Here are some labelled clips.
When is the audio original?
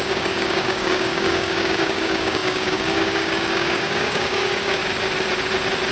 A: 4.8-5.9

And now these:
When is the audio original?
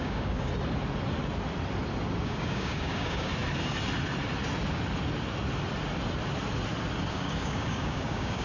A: 0.5-2.2; 3.3-7.1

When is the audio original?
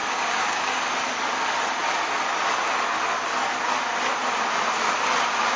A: 0.8-5.6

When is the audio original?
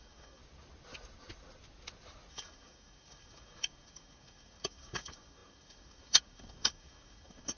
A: 0.4-2.3